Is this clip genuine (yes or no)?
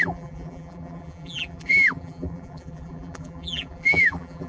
no